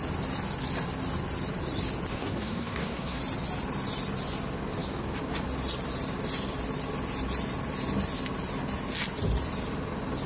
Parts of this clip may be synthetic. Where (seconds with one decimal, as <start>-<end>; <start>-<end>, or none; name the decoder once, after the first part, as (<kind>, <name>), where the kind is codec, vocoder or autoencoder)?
2.1-3.2 (codec, SNAC)